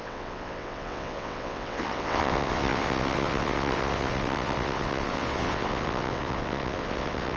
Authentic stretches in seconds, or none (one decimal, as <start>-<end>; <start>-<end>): none